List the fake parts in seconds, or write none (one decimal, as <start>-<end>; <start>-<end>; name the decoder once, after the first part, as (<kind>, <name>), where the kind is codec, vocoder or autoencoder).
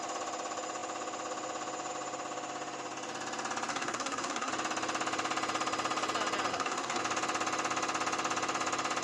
3.7-4.5 (codec, SNAC); 6.5-7.0